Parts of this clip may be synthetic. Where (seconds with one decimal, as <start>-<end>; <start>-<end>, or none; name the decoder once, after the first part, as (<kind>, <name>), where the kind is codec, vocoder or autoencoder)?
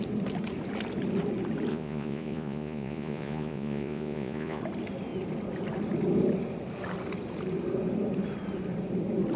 1.7-4.6 (vocoder, Vocos)